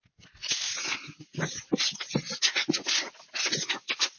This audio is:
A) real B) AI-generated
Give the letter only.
A